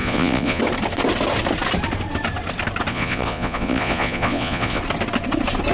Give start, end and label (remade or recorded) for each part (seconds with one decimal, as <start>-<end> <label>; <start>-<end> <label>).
0.0-0.6 remade; 0.6-2.9 recorded; 2.9-4.8 remade; 4.8-5.7 recorded